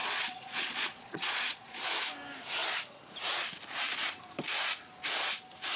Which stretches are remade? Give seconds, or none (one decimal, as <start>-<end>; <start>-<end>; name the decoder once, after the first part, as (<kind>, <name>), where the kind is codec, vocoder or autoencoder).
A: 0.0-1.8 (vocoder, Vocos)